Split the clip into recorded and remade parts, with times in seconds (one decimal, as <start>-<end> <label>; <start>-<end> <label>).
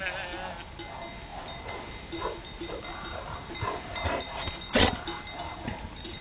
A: 0.0-6.2 recorded